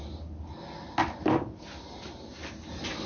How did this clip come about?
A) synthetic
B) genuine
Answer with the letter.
B